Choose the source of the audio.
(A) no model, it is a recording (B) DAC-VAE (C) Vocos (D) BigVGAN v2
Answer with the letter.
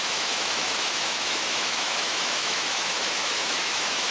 B